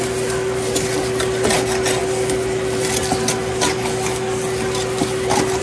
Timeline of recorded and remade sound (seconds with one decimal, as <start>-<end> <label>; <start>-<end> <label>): 0.0-5.6 recorded